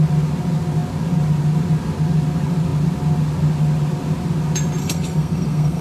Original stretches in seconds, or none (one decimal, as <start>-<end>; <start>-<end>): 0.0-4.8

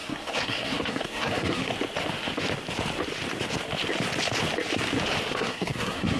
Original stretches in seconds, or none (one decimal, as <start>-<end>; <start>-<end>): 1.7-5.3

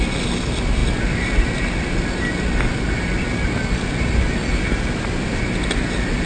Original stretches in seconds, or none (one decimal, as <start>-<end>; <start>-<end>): 0.0-6.3

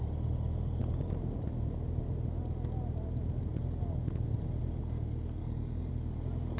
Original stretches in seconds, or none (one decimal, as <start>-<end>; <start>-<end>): 0.0-5.4; 5.9-6.6

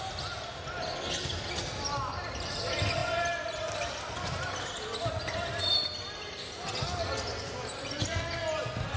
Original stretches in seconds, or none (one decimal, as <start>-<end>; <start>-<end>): 0.0-9.0

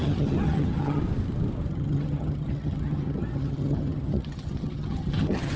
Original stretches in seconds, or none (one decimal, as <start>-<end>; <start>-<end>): 1.0-1.7